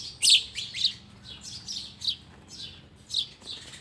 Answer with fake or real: real